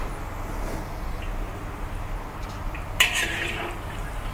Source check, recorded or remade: recorded